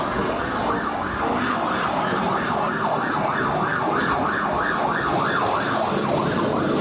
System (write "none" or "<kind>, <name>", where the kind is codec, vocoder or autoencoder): none